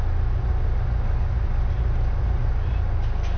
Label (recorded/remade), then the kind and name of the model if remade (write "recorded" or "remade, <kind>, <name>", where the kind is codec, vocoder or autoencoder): recorded